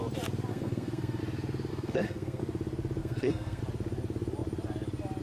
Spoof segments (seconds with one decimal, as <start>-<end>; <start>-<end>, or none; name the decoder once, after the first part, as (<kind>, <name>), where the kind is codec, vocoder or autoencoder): 0.5-1.2 (codec, SNAC); 1.7-2.4; 3.0-3.6